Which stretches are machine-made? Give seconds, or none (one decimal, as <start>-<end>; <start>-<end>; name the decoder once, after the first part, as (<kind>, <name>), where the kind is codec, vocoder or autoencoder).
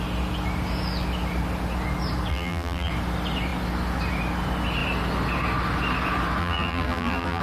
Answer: 2.3-2.9 (vocoder, BigVGAN v2); 6.4-7.4